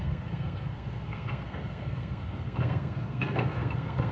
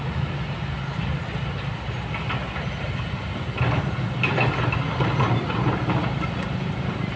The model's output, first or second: first